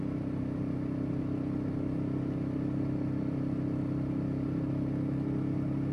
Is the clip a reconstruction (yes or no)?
no